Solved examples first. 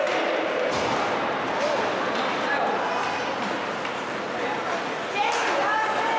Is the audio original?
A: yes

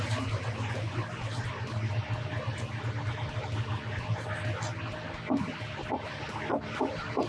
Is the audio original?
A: yes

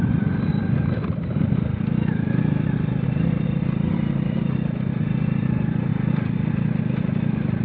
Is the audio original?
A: yes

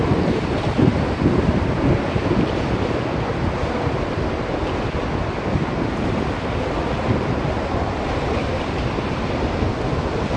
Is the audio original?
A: yes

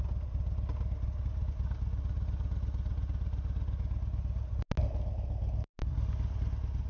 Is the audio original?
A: yes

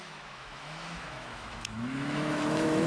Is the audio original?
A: no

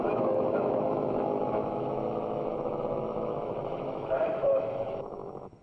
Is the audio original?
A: no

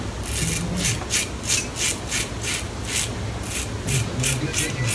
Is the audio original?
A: yes